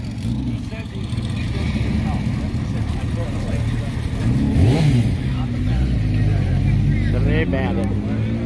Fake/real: real